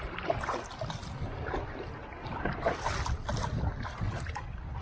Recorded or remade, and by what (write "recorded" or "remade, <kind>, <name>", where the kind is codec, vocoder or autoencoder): recorded